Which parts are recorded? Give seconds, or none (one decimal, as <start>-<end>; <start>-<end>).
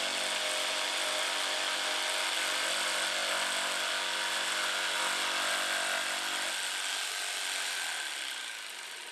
0.0-9.1